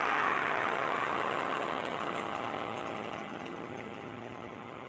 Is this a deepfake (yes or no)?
yes